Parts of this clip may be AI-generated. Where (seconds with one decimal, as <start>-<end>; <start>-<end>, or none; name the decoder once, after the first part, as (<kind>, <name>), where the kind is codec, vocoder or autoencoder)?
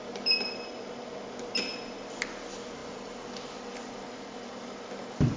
none